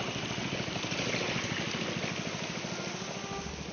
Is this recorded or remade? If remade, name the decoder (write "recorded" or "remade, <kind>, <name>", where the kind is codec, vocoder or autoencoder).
recorded